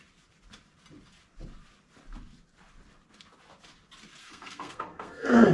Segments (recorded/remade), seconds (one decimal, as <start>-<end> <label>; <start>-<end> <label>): 0.0-4.2 recorded; 4.2-5.5 remade